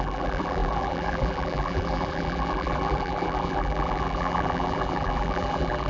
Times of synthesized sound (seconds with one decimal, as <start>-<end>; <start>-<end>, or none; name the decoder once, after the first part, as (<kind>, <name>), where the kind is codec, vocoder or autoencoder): 0.0-5.9 (vocoder, BigVGAN v2)